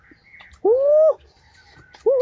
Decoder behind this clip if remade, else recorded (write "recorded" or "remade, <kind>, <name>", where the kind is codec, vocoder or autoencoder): recorded